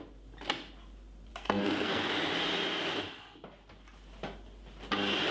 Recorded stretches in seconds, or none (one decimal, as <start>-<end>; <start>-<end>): 0.0-1.3; 2.1-5.3